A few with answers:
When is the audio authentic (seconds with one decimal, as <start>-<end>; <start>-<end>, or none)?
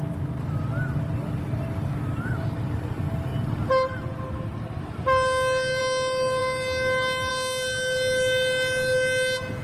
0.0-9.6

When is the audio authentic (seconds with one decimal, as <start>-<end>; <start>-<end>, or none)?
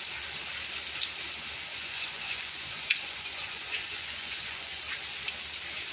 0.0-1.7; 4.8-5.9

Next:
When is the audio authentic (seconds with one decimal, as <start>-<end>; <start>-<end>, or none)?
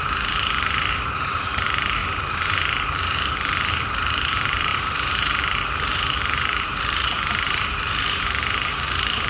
none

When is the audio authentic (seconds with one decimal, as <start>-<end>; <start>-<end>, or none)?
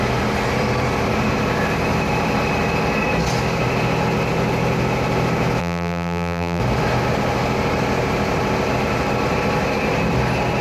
0.0-5.6; 6.6-10.6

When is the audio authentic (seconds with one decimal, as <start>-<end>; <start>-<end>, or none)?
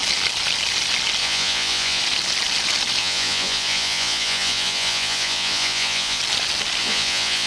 0.0-1.2; 2.0-3.0; 6.2-6.8